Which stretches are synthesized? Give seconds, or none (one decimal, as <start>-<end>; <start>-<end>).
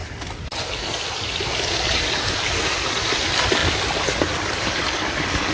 none